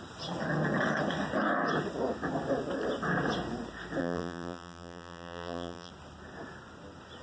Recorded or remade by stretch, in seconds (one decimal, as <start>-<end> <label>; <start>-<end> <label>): 0.0-4.0 recorded; 4.0-5.9 remade; 5.9-7.2 recorded